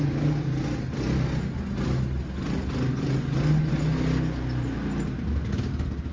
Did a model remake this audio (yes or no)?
no